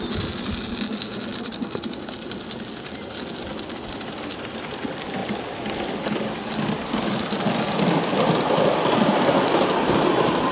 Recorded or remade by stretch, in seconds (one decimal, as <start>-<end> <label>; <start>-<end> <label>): 0.0-10.5 recorded